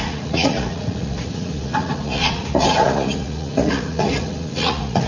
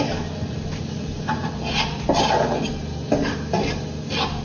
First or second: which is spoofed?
first